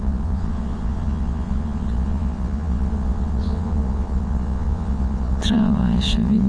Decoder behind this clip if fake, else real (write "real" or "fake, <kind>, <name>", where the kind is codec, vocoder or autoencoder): fake, vocoder, Vocos